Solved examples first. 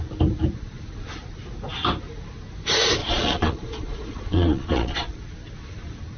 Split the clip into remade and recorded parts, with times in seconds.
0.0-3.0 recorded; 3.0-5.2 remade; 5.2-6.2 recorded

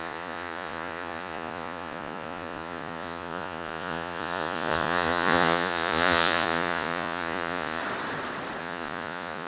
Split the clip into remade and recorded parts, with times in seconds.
0.0-7.8 remade; 7.8-8.6 recorded; 8.6-9.5 remade